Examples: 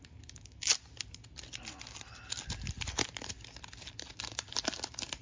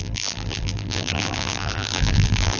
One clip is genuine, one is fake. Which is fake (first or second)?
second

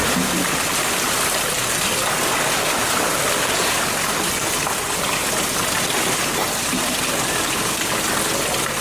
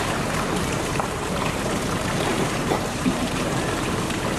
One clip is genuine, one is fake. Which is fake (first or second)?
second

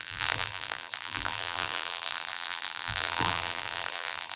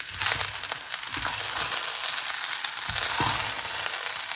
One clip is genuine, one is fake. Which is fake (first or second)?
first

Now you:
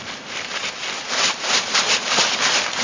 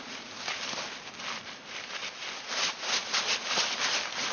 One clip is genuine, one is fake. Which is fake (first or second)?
first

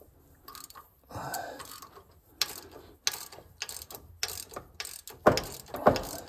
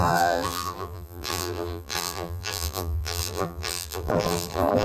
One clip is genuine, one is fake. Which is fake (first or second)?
second